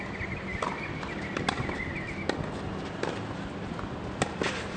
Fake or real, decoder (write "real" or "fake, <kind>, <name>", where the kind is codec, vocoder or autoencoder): real